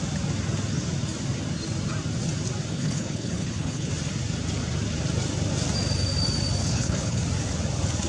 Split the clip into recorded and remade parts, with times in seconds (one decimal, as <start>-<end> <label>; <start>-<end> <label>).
0.0-2.7 recorded; 2.7-3.9 remade; 3.9-6.6 recorded; 6.6-7.2 remade; 7.2-8.1 recorded